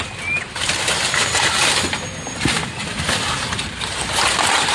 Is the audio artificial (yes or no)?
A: no